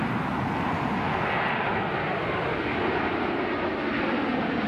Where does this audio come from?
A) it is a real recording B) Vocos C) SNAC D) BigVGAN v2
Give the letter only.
A